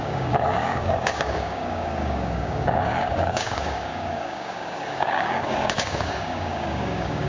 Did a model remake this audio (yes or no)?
yes